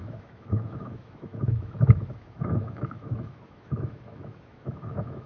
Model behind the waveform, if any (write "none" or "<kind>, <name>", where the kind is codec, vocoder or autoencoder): autoencoder, DAC-VAE